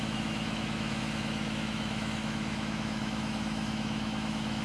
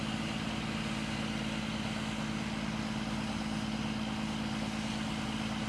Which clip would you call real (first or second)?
second